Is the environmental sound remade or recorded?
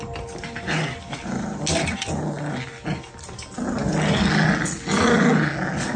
recorded